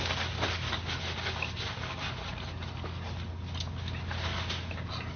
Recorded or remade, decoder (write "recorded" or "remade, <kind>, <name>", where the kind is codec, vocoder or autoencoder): recorded